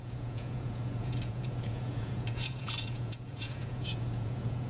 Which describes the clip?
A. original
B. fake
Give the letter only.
B